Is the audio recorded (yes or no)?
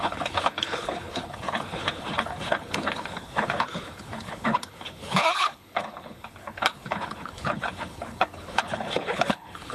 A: no